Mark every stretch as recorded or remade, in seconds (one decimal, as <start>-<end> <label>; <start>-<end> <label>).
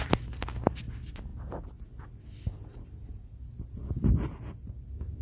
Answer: 0.0-5.2 recorded